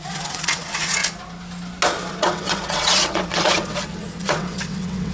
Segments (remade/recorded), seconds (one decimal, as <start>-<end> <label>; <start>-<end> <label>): 0.0-1.0 remade; 1.0-2.1 recorded; 2.1-5.1 remade